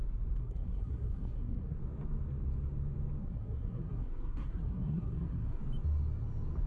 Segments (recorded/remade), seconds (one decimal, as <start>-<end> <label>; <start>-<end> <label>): 0.0-0.4 recorded; 0.4-1.8 remade; 1.8-3.2 recorded; 3.2-5.6 remade; 5.6-6.7 recorded